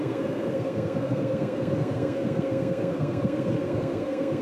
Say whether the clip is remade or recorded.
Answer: remade